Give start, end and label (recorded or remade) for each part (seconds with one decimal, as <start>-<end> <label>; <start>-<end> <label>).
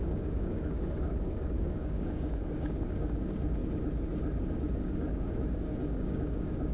0.0-3.6 remade; 3.6-4.5 recorded; 4.5-6.7 remade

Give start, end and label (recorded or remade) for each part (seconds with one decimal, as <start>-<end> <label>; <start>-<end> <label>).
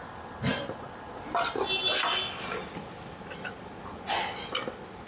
0.0-5.1 recorded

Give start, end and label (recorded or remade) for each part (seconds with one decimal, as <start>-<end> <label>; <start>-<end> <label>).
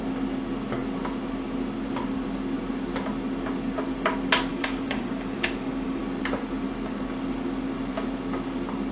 0.0-4.5 recorded; 4.5-6.0 remade; 6.0-8.9 recorded